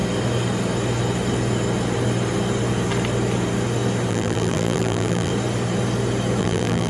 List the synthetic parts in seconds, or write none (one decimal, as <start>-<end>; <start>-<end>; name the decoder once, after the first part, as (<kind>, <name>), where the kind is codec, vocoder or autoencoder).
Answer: 4.1-5.3 (vocoder, BigVGAN v2); 6.4-6.9